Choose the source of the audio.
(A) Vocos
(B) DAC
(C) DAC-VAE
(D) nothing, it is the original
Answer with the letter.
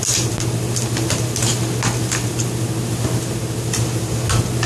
D